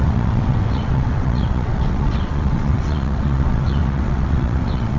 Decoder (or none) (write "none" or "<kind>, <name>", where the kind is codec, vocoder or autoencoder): vocoder, WaveNeXt